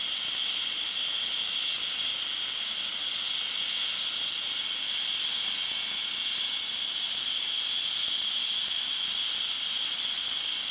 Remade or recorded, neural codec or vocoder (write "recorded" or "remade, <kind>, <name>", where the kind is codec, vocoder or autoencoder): recorded